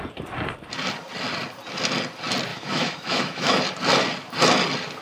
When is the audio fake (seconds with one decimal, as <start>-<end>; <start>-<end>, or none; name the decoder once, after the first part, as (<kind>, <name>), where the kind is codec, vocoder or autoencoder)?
2.5-3.6 (autoencoder, DAC-VAE)